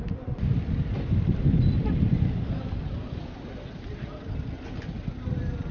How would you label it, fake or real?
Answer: real